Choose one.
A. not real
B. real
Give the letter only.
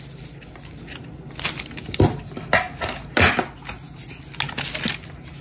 B